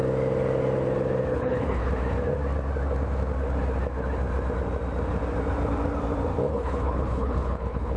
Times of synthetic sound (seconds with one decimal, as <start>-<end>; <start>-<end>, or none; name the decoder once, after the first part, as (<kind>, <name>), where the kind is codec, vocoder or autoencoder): 1.3-1.9 (codec, HILCodec); 6.5-8.0